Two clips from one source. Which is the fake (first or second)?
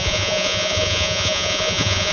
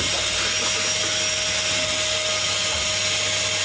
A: first